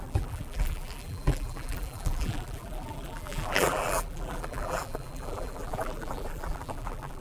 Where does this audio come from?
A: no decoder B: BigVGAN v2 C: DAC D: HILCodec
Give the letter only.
B